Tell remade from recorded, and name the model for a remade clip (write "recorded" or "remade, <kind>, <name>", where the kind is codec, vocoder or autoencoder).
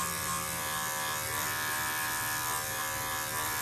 recorded